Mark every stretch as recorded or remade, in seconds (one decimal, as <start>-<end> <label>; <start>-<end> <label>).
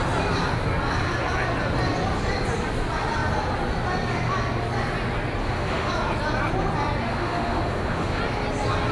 0.0-5.4 recorded; 5.4-5.9 remade; 5.9-7.1 recorded; 7.1-8.2 remade; 8.2-8.9 recorded